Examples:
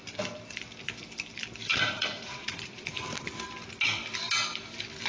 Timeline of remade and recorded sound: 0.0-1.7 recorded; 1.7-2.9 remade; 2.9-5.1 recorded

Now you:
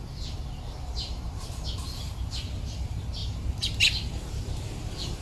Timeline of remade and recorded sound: 0.0-3.2 remade; 3.2-3.8 recorded; 3.8-5.2 remade